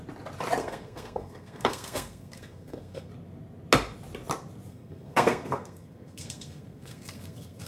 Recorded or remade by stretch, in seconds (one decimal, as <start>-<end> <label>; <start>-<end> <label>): 0.0-0.6 recorded; 0.6-3.1 remade; 3.1-4.7 recorded; 4.7-7.7 remade